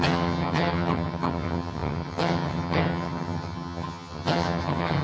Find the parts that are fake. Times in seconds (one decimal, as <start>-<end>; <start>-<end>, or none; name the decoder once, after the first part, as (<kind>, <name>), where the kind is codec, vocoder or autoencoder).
0.0-5.0 (vocoder, HiFi-GAN)